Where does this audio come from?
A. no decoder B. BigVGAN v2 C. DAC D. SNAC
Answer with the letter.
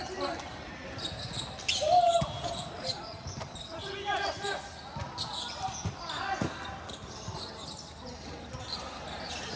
A